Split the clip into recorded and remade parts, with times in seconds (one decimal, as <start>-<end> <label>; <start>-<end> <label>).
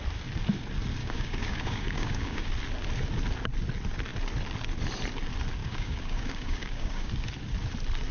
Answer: 0.0-1.0 recorded; 1.0-2.5 remade; 2.5-5.6 recorded; 5.6-7.1 remade; 7.1-8.1 recorded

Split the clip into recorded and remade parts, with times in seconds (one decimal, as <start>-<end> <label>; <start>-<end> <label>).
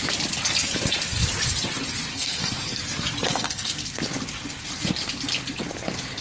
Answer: 0.0-2.1 recorded; 2.1-2.8 remade; 2.8-3.3 recorded; 3.3-4.0 remade; 4.0-6.2 recorded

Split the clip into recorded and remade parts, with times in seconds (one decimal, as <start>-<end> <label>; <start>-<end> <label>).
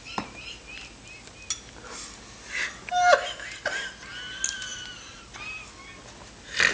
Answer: 0.0-4.7 recorded; 4.7-5.3 remade; 5.3-6.7 recorded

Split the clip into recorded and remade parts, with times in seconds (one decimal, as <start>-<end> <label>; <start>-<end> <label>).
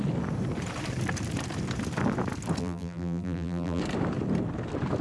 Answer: 0.0-2.6 recorded; 2.6-3.8 remade; 3.8-5.0 recorded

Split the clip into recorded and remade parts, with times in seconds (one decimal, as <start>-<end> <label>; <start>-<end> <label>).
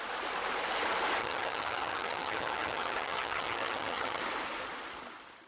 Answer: 0.0-1.2 recorded; 1.2-4.2 remade; 4.2-5.5 recorded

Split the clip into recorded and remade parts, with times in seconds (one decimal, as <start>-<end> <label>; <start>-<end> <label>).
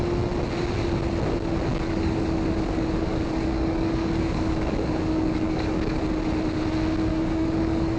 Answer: 0.0-1.7 recorded; 1.7-6.0 remade; 6.0-7.1 recorded; 7.1-8.0 remade